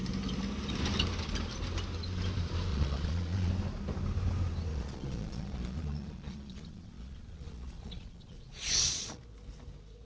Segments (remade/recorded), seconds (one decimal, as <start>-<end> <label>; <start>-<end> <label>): 0.0-2.7 recorded; 2.7-3.5 remade; 3.5-4.7 recorded; 4.7-9.2 remade; 9.2-10.0 recorded